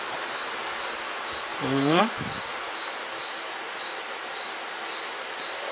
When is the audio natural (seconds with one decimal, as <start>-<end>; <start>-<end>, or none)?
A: 0.0-1.5; 2.0-2.5; 3.8-5.7